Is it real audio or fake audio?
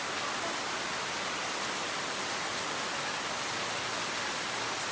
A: real